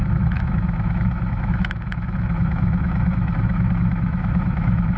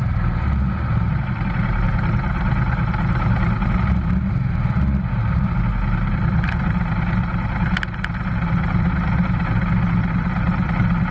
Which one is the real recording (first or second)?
second